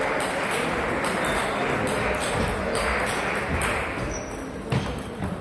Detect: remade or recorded recorded